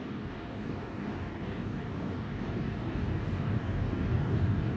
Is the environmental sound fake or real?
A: fake